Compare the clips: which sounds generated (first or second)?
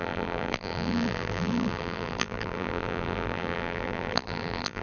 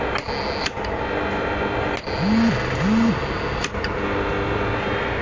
first